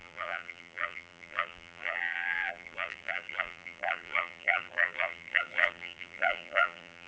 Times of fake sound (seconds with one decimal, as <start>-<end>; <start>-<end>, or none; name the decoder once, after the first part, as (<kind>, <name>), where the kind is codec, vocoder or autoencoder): 0.0-7.1 (vocoder, BigVGAN v2)